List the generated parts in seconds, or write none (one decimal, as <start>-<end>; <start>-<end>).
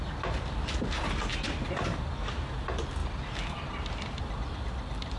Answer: none